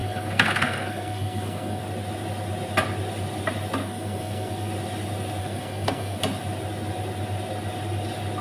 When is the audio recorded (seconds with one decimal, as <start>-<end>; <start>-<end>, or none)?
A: 1.8-3.8; 4.7-5.4; 6.2-8.4